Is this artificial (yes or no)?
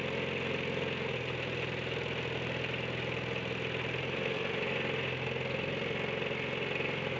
no